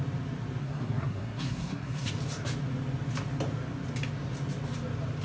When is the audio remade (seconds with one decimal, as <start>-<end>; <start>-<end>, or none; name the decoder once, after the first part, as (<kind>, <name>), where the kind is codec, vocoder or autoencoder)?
0.6-2.1 (codec, SNAC)